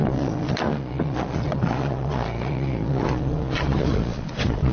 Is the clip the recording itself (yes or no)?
no